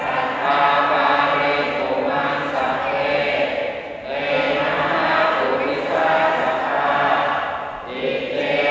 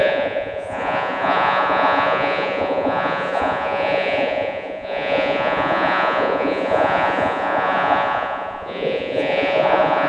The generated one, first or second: second